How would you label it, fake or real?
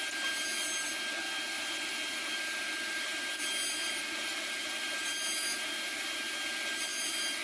real